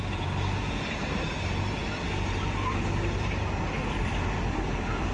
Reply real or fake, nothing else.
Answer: real